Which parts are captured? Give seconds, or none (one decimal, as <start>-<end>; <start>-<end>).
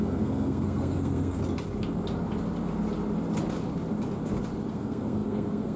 1.4-4.7